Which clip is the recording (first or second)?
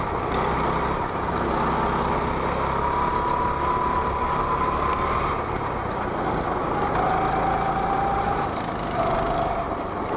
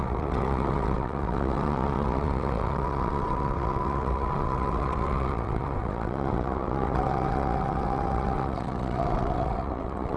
first